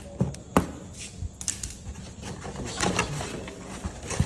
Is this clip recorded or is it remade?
recorded